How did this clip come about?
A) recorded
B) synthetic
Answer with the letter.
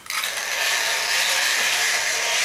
A